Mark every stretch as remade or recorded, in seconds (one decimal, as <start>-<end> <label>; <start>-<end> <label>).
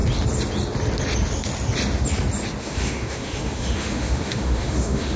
0.0-2.6 recorded; 2.6-5.2 remade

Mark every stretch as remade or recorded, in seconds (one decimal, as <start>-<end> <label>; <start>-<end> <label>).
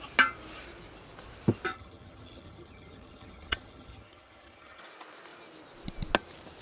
0.0-1.7 recorded; 1.7-4.8 remade; 4.8-6.6 recorded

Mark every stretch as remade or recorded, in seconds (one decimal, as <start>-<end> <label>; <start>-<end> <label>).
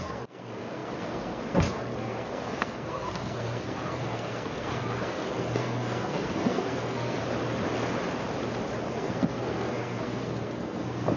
0.0-7.2 remade; 7.2-8.9 recorded; 8.9-11.2 remade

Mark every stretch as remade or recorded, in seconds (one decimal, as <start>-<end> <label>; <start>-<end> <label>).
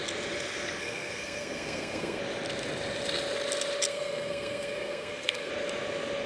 0.0-0.8 recorded; 0.8-2.2 remade; 2.2-3.9 recorded; 3.9-5.5 remade; 5.5-6.3 recorded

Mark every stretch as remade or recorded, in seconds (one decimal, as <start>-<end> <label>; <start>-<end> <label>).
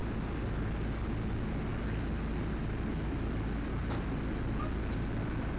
0.0-5.6 recorded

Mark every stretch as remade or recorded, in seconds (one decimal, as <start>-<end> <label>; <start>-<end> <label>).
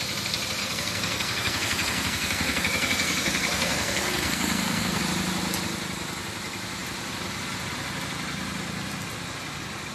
0.0-0.6 recorded; 0.6-5.0 remade; 5.0-9.9 recorded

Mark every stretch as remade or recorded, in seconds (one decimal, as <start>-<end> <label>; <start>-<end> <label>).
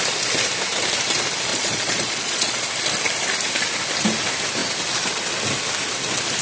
0.0-1.5 recorded; 1.5-2.6 remade; 2.6-6.4 recorded